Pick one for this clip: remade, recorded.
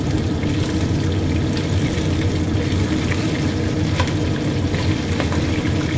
recorded